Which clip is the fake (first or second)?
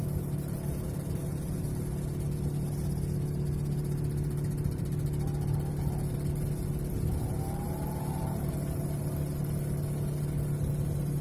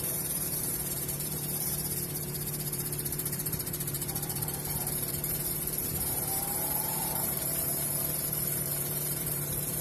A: second